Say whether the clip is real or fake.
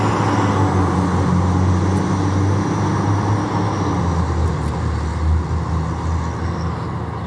real